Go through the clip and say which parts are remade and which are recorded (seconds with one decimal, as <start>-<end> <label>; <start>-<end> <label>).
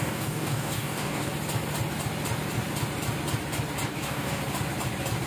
0.0-1.3 remade; 1.3-3.9 recorded; 3.9-4.4 remade; 4.4-5.3 recorded